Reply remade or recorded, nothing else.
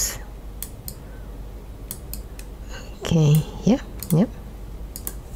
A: recorded